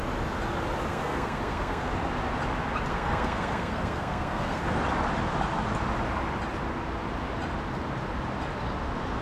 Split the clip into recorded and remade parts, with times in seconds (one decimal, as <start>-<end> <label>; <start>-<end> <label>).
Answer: 0.0-0.9 recorded; 0.9-1.9 remade; 1.9-2.9 recorded; 2.9-4.6 remade; 4.6-9.2 recorded